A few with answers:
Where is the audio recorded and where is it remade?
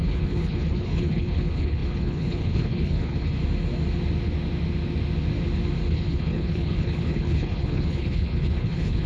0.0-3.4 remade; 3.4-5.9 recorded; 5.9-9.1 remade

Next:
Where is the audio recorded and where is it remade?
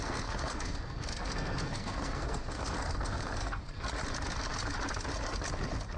0.0-3.6 remade; 3.6-6.0 recorded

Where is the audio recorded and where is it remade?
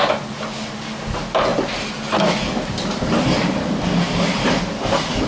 0.0-5.3 recorded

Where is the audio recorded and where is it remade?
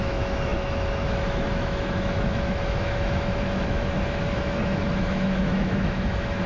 0.0-6.5 remade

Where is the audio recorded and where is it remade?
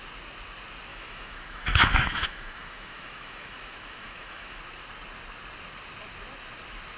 0.0-0.9 recorded; 0.9-4.6 remade; 4.6-7.0 recorded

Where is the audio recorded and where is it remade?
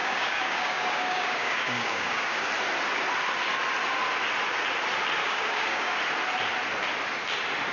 0.0-2.5 remade; 2.5-5.2 recorded; 5.2-6.0 remade; 6.0-7.7 recorded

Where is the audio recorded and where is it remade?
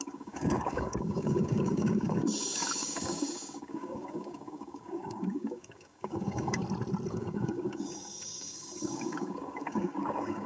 0.0-6.6 remade; 6.6-7.1 recorded; 7.1-10.5 remade